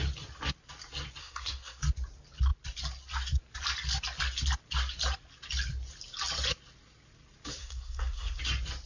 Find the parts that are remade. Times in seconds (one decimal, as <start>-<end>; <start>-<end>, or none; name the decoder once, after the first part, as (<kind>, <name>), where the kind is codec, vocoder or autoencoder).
1.2-1.8 (codec, SNAC); 7.6-8.4